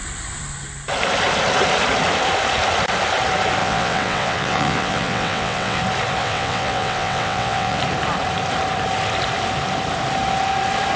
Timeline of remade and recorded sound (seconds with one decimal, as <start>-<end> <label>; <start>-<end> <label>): 0.0-3.6 recorded; 3.6-5.8 remade; 5.8-6.2 recorded; 6.2-7.8 remade; 7.8-11.0 recorded